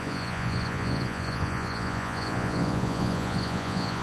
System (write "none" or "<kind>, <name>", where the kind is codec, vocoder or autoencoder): vocoder, Vocos